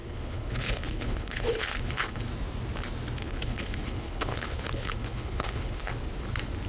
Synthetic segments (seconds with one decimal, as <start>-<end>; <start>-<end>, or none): 0.0-2.2; 3.2-5.9